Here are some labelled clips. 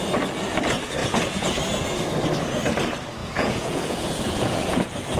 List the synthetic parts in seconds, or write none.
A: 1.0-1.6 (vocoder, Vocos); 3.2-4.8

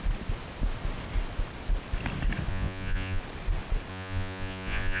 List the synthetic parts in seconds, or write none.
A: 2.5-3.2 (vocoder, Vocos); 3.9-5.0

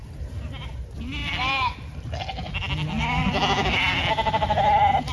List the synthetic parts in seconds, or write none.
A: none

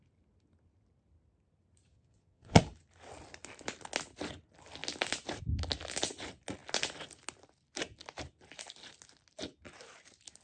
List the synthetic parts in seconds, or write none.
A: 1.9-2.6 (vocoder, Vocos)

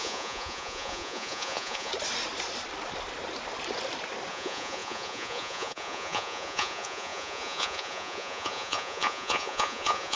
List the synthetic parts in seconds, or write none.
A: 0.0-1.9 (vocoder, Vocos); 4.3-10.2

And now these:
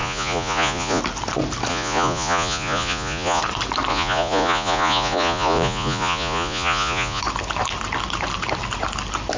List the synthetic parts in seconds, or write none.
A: 0.0-1.0 (vocoder, Vocos); 1.7-3.4; 3.9-7.2

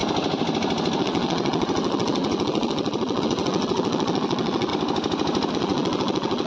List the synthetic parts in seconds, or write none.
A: 1.0-4.7 (vocoder, Vocos); 5.5-6.5